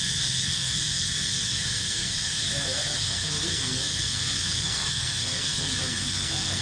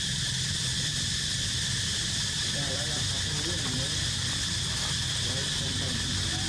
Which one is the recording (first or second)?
second